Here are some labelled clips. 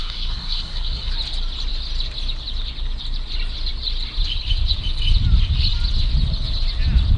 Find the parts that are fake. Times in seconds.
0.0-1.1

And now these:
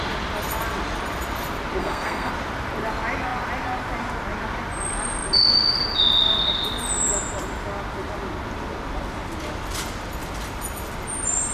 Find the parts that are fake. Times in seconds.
1.8-2.3